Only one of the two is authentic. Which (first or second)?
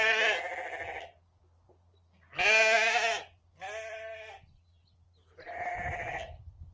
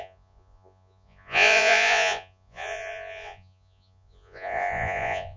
first